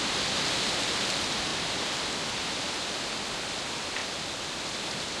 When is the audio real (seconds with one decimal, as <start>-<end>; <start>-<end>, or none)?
0.0-5.2

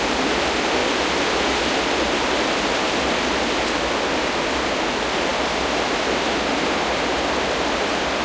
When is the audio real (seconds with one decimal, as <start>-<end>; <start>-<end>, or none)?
0.0-0.8; 2.2-5.3

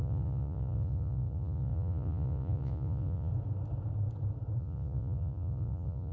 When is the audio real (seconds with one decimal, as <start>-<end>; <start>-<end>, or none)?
3.3-4.6

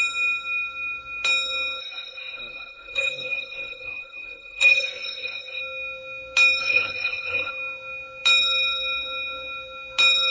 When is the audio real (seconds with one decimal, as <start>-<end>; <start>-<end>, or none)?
0.0-1.8; 5.6-6.6; 7.5-10.3

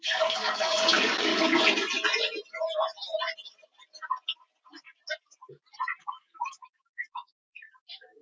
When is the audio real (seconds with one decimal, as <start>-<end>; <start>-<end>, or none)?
1.3-6.0

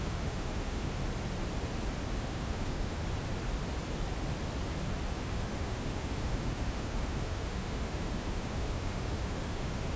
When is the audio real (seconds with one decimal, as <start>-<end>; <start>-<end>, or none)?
1.0-2.2; 3.0-5.1

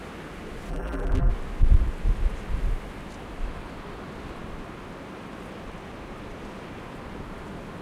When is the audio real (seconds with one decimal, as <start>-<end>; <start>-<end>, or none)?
0.0-0.7; 1.3-7.8